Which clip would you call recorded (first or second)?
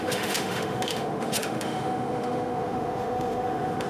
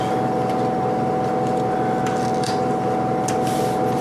second